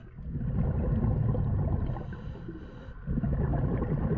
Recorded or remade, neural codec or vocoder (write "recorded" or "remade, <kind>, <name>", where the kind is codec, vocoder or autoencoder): recorded